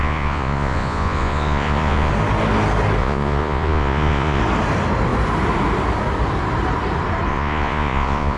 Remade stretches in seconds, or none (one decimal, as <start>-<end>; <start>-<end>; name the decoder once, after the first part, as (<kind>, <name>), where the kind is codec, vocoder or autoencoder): 0.0-2.1 (vocoder, Vocos); 3.0-4.4; 7.3-8.4